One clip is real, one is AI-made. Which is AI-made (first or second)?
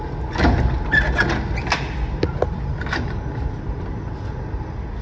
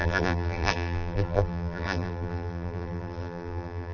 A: second